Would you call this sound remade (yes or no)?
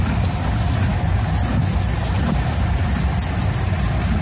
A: no